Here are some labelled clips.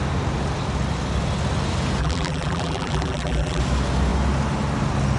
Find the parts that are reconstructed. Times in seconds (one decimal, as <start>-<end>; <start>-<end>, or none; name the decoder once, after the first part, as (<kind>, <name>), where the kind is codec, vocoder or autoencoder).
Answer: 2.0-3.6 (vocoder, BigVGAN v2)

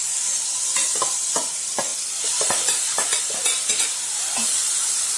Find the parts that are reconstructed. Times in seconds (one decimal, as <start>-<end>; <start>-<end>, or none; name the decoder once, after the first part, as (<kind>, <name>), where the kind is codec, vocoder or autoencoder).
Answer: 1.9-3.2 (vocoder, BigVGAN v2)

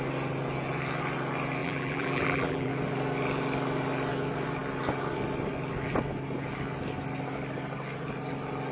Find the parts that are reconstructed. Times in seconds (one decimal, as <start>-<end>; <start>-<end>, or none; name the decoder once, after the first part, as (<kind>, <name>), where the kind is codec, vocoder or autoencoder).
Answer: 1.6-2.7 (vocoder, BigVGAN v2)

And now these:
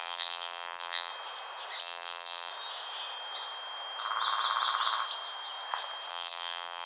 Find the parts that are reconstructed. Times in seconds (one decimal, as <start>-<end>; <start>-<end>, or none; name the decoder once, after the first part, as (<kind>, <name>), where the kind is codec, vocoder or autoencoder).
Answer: 0.0-1.1 (vocoder, BigVGAN v2); 1.8-2.5; 6.1-6.9

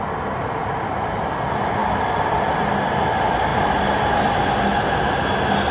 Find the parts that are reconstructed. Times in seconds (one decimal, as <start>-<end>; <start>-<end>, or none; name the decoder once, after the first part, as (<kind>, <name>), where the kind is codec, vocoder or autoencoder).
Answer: 0.6-1.3 (vocoder, BigVGAN v2); 1.8-2.6